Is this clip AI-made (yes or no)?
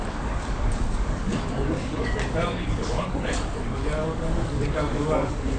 yes